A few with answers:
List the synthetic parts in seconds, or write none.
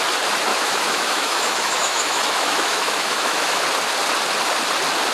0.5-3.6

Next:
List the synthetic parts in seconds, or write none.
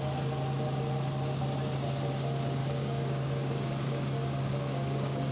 2.6-5.3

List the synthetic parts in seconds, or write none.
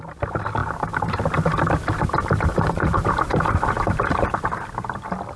0.6-1.2; 2.5-5.0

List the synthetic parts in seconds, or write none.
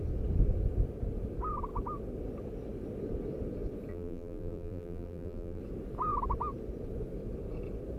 3.9-5.6